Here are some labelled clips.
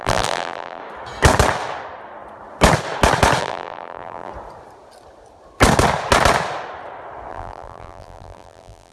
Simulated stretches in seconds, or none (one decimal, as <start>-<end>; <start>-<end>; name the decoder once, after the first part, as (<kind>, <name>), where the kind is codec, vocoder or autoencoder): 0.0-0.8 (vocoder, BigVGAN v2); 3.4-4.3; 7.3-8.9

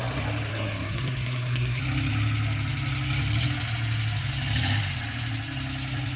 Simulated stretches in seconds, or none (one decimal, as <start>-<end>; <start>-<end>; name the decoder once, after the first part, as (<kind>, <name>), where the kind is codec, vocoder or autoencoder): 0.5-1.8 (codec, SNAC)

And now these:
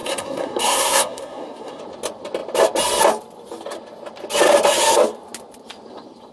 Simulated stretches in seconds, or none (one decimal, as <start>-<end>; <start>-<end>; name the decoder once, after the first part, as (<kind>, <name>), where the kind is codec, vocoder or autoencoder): 0.0-1.8 (codec, SNAC)

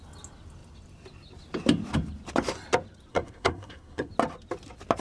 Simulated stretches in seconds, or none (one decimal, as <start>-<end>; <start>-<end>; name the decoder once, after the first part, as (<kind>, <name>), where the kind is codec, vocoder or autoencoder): 3.1-4.1 (codec, SNAC)

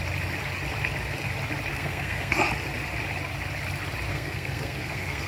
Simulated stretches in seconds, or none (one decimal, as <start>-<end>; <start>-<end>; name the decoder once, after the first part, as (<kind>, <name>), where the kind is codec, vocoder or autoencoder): 1.7-2.3 (codec, SNAC); 4.1-5.3

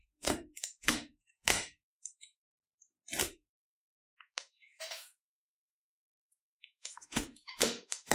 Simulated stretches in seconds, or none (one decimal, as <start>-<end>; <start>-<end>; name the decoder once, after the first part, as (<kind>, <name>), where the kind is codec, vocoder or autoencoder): 0.0-2.5 (autoencoder, DAC-VAE); 3.2-8.1